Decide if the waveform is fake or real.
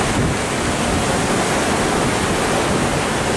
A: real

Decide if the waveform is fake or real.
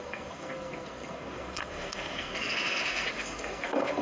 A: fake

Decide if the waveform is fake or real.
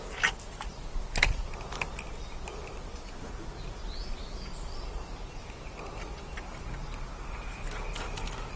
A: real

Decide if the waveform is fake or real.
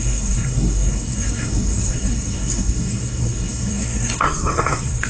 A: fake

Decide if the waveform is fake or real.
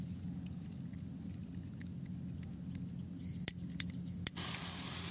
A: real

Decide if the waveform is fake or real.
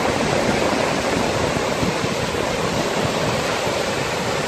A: real